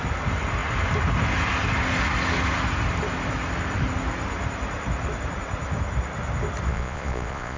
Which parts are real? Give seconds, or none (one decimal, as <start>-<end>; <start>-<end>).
0.0-6.7